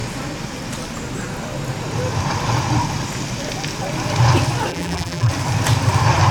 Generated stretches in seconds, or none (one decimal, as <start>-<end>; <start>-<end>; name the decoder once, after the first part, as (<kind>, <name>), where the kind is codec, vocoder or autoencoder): 4.7-5.3 (vocoder, BigVGAN v2)

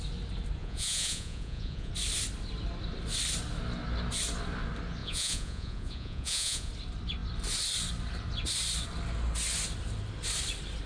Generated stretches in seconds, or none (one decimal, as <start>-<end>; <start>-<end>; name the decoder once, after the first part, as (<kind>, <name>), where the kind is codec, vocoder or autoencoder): 0.6-1.9 (vocoder, Vocos); 5.0-6.7

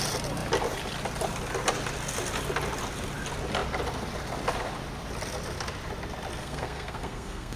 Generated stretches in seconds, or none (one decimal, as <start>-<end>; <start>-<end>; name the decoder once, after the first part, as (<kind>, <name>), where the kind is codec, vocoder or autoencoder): 6.4-7.6 (codec, SNAC)

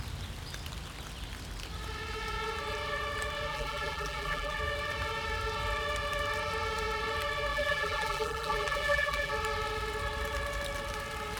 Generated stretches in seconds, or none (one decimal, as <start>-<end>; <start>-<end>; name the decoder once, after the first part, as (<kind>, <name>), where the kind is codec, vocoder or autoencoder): 3.5-4.6 (vocoder, BigVGAN v2); 7.5-9.3

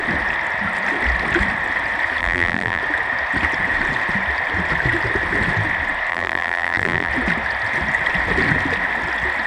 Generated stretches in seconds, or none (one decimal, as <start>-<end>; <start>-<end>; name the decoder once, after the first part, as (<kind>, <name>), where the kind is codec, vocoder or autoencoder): 2.2-2.8 (vocoder, BigVGAN v2); 6.1-7.1